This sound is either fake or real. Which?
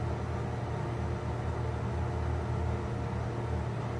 real